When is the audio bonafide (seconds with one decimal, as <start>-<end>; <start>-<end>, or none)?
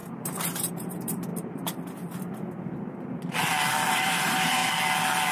1.3-3.9; 4.6-5.3